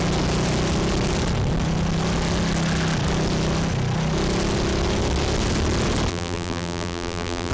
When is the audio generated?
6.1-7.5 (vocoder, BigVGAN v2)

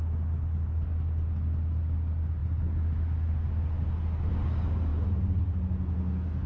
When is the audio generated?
4.9-5.4 (vocoder, BigVGAN v2)

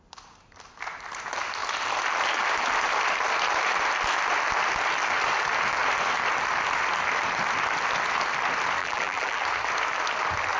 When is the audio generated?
8.8-9.4 (vocoder, BigVGAN v2)

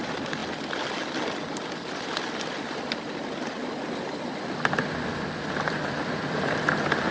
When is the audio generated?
0.0-7.1 (vocoder, BigVGAN v2)

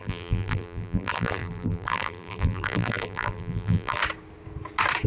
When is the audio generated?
0.0-4.0 (vocoder, BigVGAN v2)

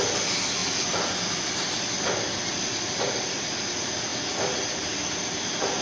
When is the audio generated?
0.6-3.6 (vocoder, BigVGAN v2)

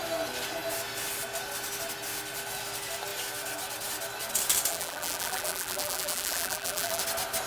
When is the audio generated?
4.7-7.0 (vocoder, BigVGAN v2)